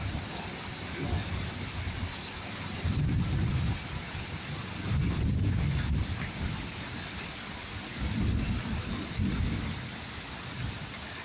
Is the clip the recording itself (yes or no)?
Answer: yes